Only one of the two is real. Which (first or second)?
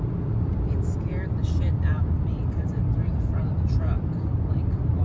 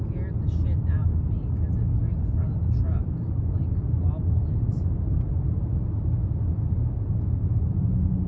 second